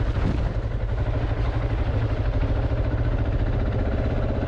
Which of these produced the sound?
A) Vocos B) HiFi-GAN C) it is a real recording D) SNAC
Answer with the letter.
C